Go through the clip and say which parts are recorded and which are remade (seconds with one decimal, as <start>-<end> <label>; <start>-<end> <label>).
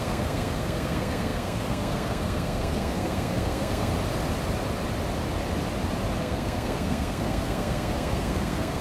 0.0-3.9 remade; 3.9-6.2 recorded; 6.2-8.8 remade